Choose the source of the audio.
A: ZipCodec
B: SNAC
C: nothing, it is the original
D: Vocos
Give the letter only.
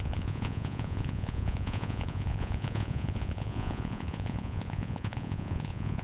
D